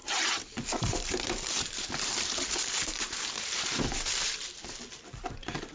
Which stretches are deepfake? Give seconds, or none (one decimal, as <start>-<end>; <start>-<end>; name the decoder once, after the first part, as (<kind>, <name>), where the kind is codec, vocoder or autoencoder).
0.0-5.7 (vocoder, BigVGAN v2)